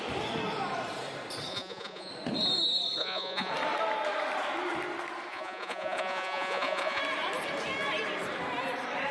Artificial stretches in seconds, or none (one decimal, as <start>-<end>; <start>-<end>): 1.5-2.1; 3.0-3.5; 5.3-7.0